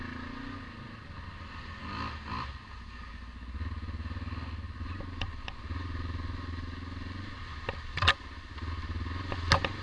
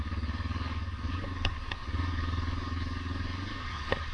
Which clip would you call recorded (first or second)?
first